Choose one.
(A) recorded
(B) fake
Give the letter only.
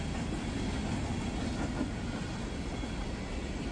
A